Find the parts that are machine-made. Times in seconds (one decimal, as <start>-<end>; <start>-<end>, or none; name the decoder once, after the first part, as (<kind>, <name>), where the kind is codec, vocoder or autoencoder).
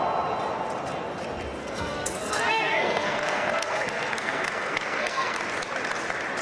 1.6-5.4 (codec, SNAC)